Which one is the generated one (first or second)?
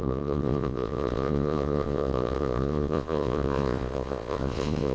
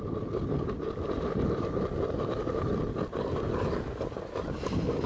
first